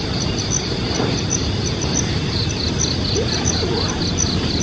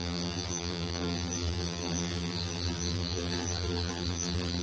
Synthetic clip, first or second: second